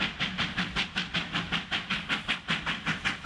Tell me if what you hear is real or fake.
real